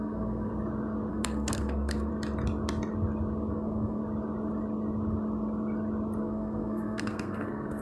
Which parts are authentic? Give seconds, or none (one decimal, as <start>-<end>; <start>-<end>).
0.5-1.1; 2.1-3.5; 4.0-6.2